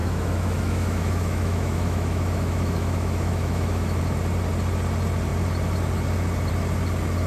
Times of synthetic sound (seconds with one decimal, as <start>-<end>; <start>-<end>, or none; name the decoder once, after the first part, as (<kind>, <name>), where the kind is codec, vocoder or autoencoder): 0.0-4.0 (autoencoder, DAC-VAE)